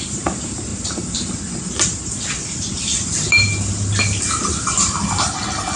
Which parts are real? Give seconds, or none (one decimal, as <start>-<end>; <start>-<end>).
0.0-5.8